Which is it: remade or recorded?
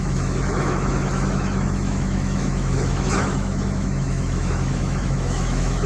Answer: remade